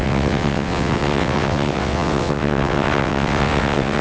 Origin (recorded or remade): remade